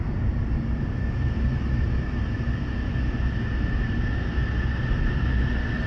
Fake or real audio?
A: real